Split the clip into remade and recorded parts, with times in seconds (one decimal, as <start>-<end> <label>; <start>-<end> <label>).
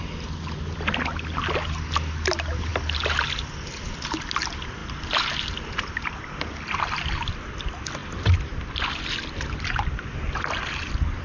0.0-11.2 recorded